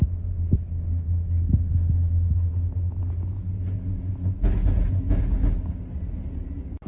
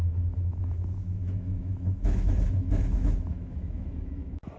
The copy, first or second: second